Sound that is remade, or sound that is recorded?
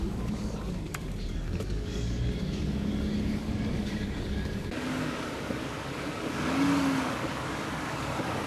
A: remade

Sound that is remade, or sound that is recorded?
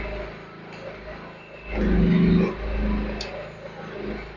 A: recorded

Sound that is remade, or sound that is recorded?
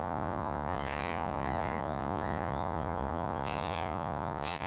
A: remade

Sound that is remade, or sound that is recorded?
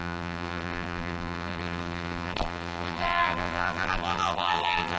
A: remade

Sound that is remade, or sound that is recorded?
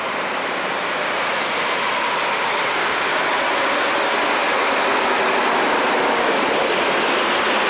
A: recorded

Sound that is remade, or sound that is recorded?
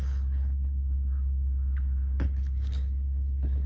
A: remade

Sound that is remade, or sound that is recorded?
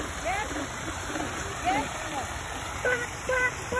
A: remade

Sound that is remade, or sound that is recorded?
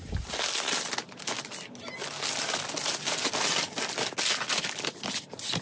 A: recorded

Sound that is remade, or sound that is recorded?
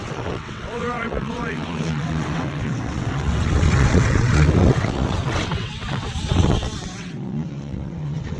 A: remade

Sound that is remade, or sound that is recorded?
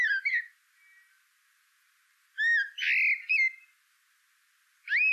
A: recorded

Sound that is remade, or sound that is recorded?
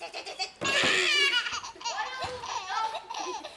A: recorded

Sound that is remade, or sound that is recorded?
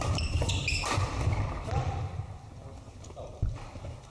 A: recorded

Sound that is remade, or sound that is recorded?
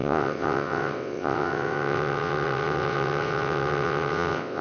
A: remade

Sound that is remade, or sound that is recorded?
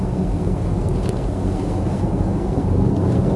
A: remade